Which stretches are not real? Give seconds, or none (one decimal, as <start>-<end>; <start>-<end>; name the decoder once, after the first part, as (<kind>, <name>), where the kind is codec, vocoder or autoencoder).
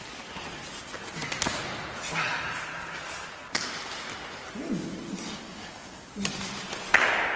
5.4-6.1 (codec, DAC)